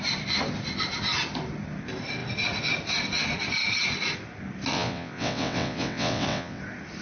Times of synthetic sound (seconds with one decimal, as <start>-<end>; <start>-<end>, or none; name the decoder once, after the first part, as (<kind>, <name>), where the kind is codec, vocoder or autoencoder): 4.7-6.6 (vocoder, WaveNeXt)